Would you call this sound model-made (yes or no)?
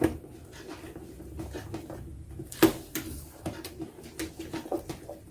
no